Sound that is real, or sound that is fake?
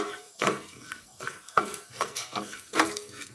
fake